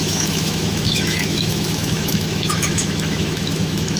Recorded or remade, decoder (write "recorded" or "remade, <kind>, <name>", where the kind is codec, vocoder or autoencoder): remade, autoencoder, DAC-VAE